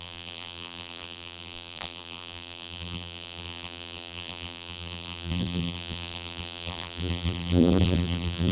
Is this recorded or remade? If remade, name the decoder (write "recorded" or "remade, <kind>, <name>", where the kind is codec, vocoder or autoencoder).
remade, vocoder, BigVGAN v2